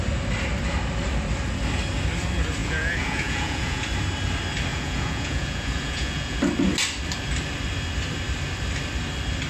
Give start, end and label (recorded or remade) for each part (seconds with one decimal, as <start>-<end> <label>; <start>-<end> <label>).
0.0-2.6 recorded; 2.6-3.8 remade; 3.8-4.7 recorded; 4.7-6.4 remade; 6.4-9.5 recorded